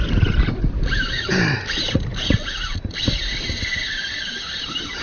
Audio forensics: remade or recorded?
recorded